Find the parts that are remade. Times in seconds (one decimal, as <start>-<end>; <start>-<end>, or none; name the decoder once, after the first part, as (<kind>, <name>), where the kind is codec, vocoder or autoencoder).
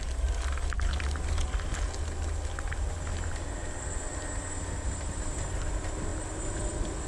none